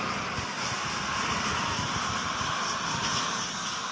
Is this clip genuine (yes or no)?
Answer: yes